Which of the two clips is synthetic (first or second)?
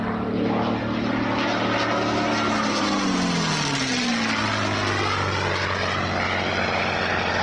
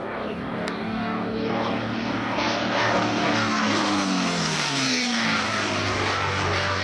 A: second